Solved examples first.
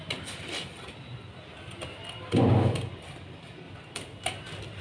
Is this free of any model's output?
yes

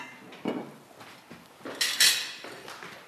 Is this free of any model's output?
yes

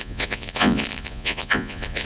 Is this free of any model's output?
no